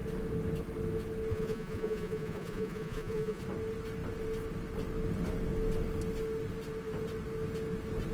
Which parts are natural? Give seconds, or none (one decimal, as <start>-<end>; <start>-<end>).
0.0-1.3; 3.4-8.1

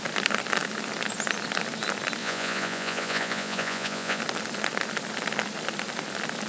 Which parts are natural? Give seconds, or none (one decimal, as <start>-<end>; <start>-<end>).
0.0-2.2; 4.2-6.5

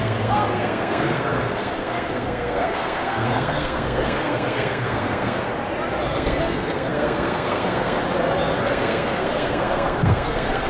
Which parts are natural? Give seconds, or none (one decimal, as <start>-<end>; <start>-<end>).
5.5-6.1; 8.0-8.6

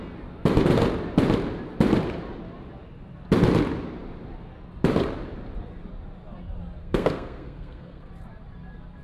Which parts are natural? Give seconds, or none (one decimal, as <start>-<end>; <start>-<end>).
0.0-6.8; 8.1-9.0

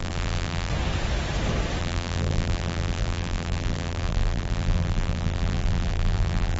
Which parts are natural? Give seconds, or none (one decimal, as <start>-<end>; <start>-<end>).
0.7-1.8

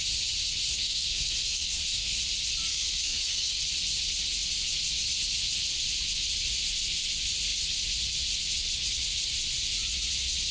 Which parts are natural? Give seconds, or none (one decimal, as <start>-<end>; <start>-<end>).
0.0-0.8; 2.2-2.7; 3.6-10.5

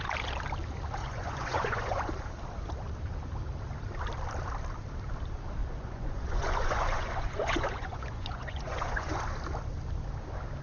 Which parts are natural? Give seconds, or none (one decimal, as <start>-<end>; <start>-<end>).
0.0-1.0; 2.1-5.6; 9.2-10.6

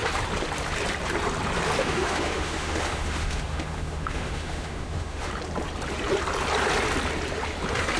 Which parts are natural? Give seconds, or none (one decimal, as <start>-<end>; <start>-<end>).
0.0-1.8; 5.3-8.0